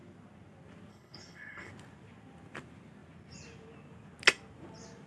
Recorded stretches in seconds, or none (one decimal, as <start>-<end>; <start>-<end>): 0.0-0.9; 1.7-5.1